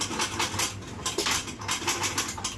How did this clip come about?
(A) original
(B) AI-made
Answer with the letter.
A